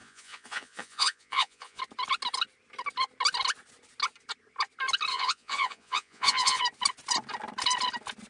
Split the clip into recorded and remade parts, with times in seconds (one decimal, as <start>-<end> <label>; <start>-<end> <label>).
0.0-1.8 remade; 1.8-5.1 recorded; 5.1-6.6 remade; 6.6-8.3 recorded